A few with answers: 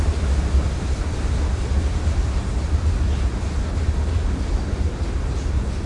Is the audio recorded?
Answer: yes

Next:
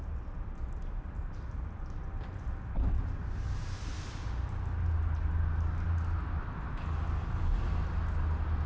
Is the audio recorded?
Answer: yes